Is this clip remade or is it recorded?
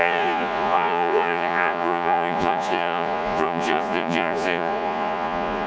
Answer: remade